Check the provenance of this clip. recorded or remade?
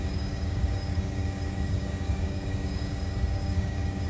remade